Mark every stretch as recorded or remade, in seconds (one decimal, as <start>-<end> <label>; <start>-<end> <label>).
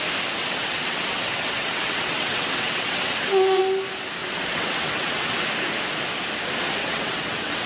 0.0-0.4 recorded; 0.4-3.6 remade; 3.6-4.2 recorded; 4.2-5.5 remade; 5.5-6.8 recorded; 6.8-7.7 remade